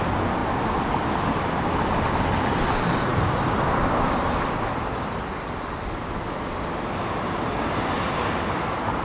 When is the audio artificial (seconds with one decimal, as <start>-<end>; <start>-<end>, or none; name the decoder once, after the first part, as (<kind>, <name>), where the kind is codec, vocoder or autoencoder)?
none